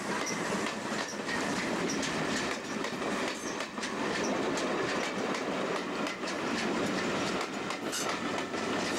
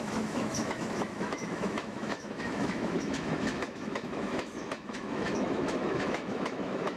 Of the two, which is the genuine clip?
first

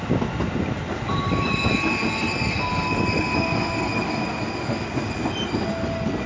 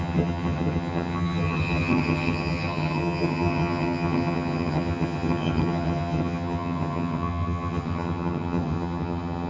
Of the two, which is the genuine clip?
first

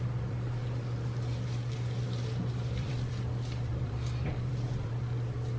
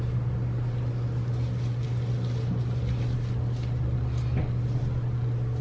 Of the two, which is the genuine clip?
second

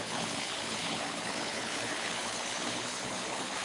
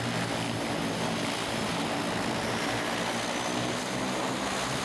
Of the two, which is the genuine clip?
second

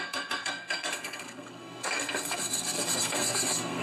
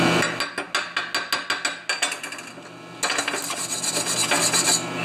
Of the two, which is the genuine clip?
second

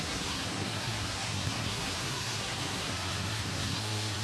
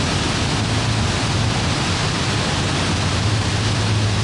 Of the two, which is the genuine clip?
second